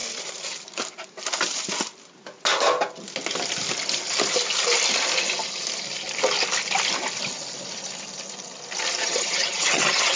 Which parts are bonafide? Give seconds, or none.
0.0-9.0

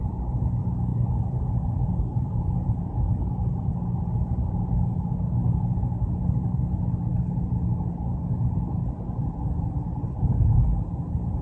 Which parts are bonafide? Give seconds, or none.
0.0-11.4

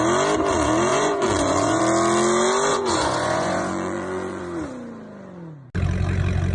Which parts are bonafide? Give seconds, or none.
0.0-0.9; 1.8-2.7; 4.4-6.5

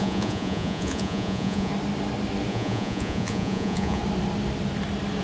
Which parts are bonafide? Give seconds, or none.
1.7-2.5; 4.0-5.2

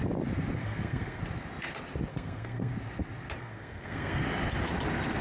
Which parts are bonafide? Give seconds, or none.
0.0-0.6; 1.2-2.1; 2.7-3.4; 4.2-5.2

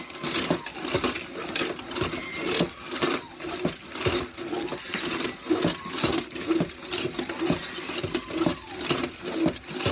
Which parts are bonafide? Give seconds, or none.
0.0-9.9

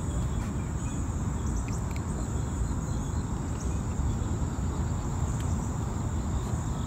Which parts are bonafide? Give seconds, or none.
0.0-6.9